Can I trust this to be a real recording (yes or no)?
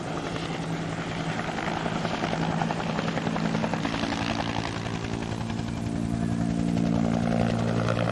yes